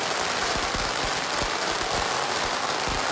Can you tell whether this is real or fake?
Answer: real